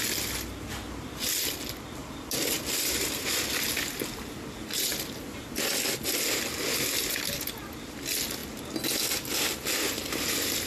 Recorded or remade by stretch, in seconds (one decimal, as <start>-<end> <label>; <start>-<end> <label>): 0.0-2.0 recorded; 2.0-3.3 remade; 3.3-10.7 recorded